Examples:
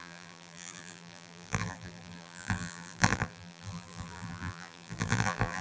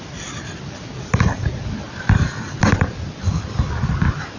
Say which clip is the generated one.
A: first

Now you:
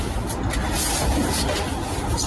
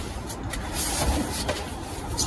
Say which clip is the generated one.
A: second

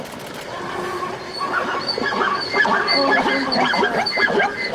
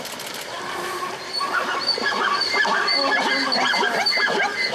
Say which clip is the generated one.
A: second